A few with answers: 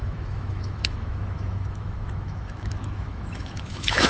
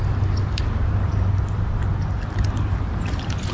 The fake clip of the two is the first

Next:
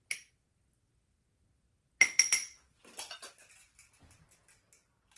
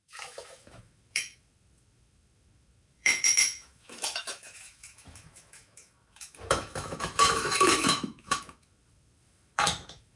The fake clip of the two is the second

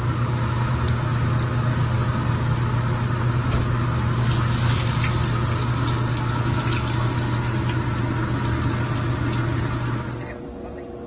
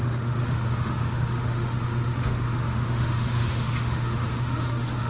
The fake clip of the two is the second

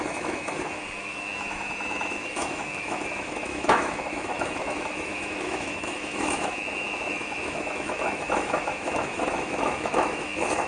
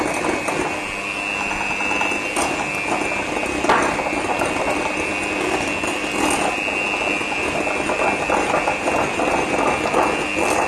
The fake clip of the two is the first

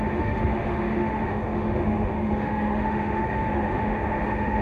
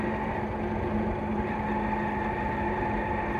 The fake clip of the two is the first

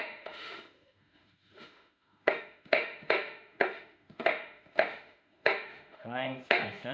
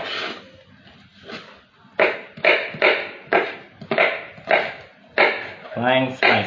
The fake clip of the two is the first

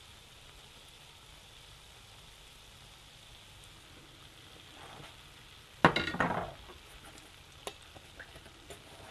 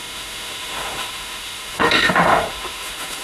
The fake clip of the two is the second